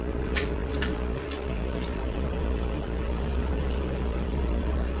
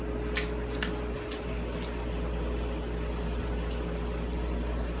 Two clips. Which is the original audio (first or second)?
second